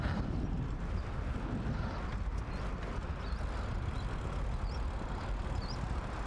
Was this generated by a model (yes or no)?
no